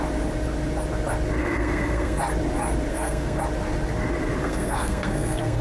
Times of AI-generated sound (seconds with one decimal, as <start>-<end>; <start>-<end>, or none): 1.4-2.2; 2.9-3.4; 4.4-5.6